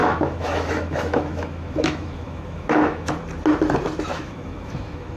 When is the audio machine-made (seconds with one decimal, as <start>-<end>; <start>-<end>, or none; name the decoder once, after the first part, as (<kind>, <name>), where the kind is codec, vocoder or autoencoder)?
0.0-3.1 (autoencoder, DAC-VAE); 4.1-5.2